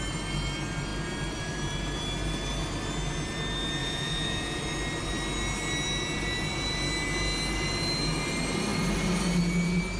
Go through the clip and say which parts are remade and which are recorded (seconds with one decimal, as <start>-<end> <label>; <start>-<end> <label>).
0.0-3.8 recorded; 3.8-4.6 remade; 4.6-10.0 recorded